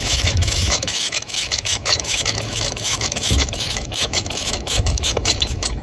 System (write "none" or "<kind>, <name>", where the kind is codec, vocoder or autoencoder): autoencoder, DAC-VAE